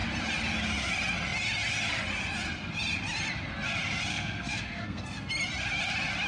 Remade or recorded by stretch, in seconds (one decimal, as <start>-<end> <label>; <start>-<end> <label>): 0.0-4.1 recorded; 4.1-5.3 remade; 5.3-6.3 recorded